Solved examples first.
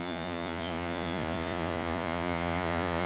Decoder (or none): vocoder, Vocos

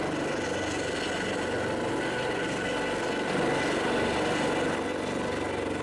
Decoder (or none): none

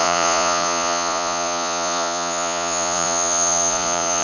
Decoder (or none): vocoder, Vocos